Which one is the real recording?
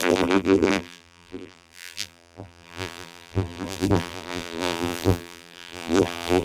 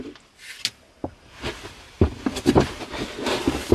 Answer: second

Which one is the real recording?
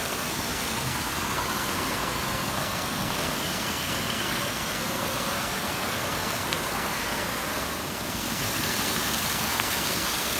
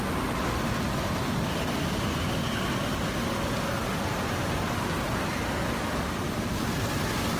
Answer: second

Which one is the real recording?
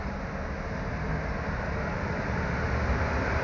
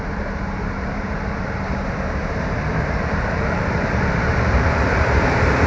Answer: first